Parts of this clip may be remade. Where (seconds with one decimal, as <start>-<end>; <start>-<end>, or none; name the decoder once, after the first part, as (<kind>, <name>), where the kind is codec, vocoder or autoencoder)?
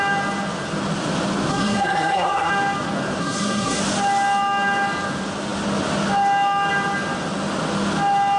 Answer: 1.5-2.5 (codec, SNAC); 3.2-3.8